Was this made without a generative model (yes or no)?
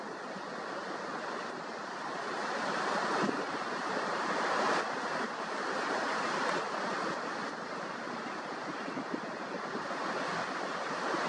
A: yes